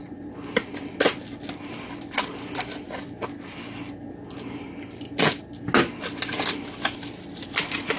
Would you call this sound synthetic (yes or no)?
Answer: no